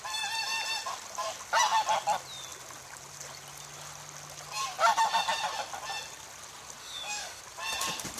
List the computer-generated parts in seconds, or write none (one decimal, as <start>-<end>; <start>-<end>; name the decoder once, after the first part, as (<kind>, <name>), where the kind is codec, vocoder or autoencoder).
6.8-7.4 (autoencoder, DAC-VAE)